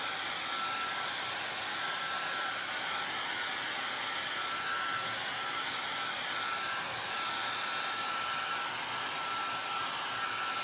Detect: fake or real real